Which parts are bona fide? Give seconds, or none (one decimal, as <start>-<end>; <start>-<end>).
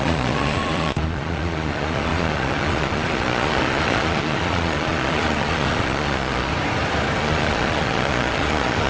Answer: 6.5-7.2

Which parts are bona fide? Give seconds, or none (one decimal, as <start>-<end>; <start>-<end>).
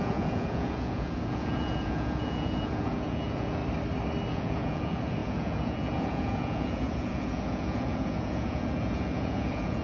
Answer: 3.6-4.3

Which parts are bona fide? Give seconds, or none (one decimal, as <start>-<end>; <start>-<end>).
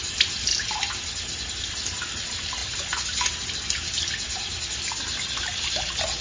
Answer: 0.0-6.2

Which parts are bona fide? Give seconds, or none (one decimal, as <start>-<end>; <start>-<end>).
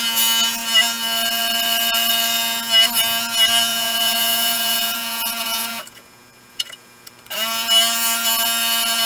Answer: 0.0-3.7; 7.1-9.1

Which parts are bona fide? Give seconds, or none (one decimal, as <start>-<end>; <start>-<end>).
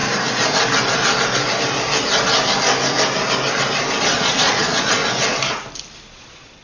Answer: 0.0-4.0; 5.0-6.1